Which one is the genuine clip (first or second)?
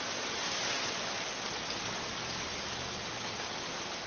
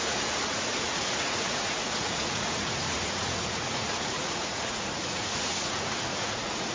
first